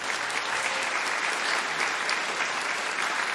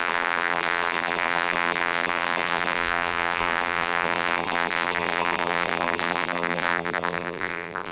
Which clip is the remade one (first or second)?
second